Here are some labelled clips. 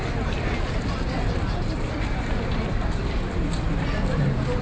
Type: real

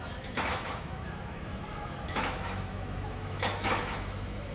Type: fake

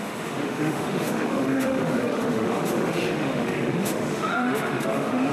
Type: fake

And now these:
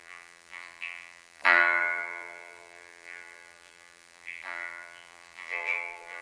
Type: fake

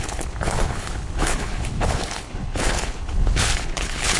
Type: fake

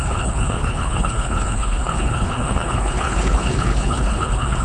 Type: fake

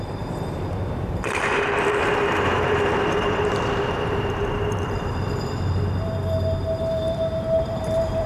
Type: fake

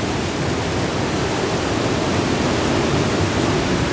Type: real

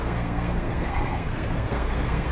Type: fake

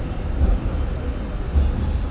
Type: real